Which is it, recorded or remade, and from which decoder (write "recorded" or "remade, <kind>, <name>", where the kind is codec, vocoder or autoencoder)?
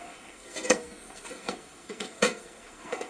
remade, codec, SNAC